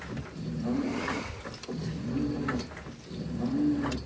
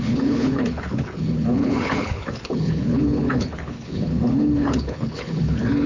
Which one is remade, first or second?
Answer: second